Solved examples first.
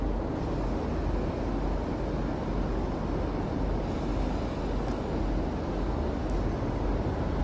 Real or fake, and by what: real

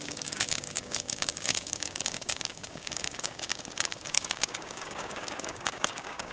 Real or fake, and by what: fake, codec, DAC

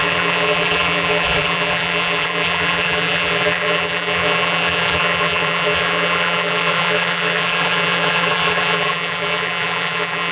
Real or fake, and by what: fake, vocoder, BigVGAN v2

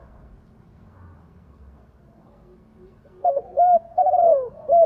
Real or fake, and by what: fake, codec, SNAC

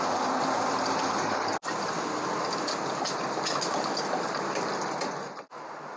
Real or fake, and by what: real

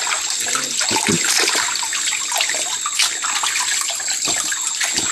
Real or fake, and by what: real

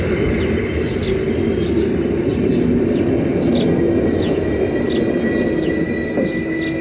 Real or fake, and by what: real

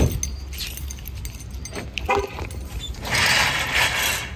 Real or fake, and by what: real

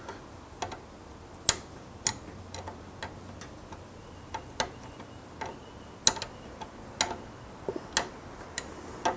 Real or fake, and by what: real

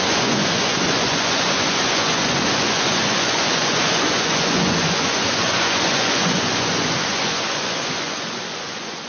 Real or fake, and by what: fake, vocoder, Vocos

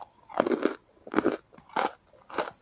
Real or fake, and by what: real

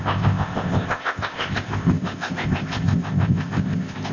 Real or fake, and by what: fake, codec, ZipCodec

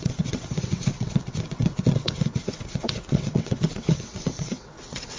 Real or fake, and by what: fake, vocoder, WaveNeXt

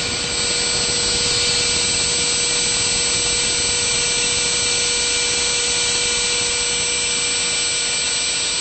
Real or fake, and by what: real